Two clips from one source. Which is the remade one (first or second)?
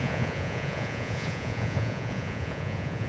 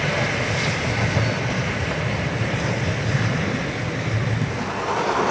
first